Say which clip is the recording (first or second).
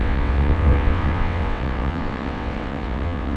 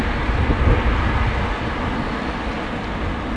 second